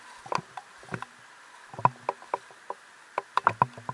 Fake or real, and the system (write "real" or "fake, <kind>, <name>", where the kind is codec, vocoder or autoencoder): real